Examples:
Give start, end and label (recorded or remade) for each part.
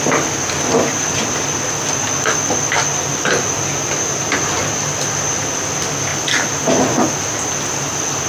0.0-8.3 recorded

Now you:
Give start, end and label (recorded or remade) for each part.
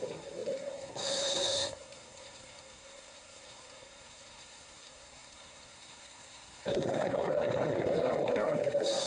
0.0-9.1 remade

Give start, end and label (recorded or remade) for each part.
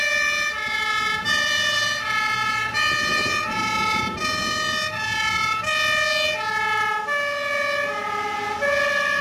0.0-9.2 recorded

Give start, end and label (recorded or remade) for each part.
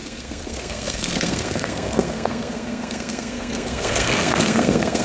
0.0-5.0 remade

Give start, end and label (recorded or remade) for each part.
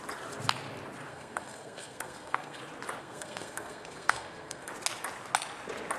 0.0-1.1 recorded; 1.1-2.6 remade; 2.6-3.0 recorded; 3.0-4.7 remade; 4.7-6.0 recorded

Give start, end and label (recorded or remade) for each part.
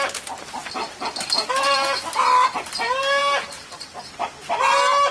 0.0-5.1 recorded